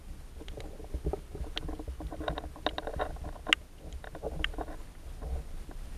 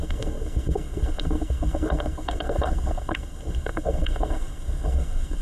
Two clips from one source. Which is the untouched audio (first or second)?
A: first